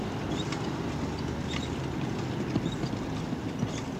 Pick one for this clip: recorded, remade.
recorded